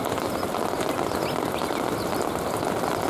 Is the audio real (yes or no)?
yes